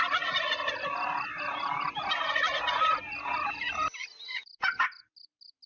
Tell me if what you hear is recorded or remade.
recorded